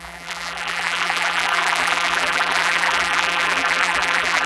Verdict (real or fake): fake